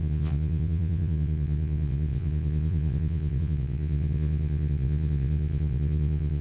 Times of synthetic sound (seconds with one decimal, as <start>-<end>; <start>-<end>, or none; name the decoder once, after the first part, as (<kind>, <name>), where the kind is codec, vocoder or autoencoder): 0.0-6.4 (vocoder, Vocos)